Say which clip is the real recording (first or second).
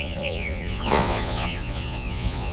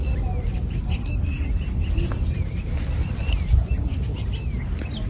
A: second